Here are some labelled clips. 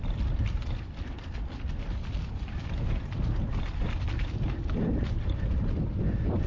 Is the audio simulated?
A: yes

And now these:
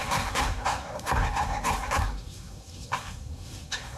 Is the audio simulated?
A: yes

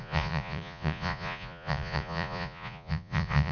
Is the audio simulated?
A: yes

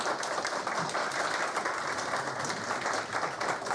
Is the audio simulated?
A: no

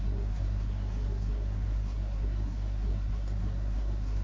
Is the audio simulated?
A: yes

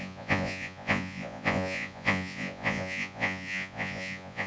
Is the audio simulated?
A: yes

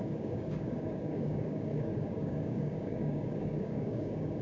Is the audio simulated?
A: yes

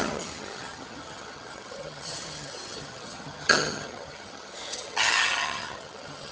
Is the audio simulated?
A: yes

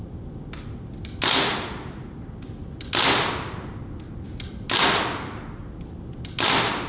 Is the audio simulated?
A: no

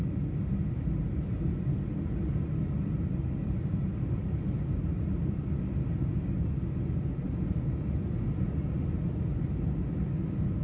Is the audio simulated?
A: no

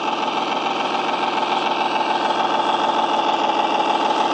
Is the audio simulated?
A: no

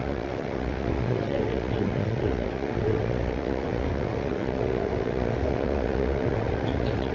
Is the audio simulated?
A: yes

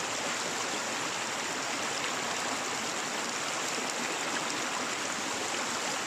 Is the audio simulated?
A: no